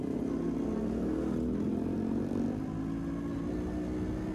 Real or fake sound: real